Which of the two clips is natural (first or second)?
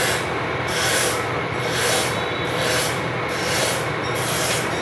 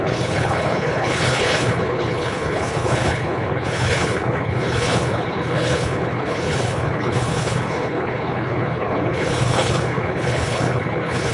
first